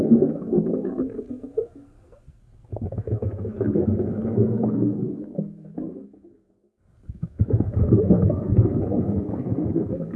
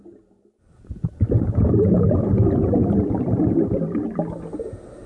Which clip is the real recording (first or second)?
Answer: second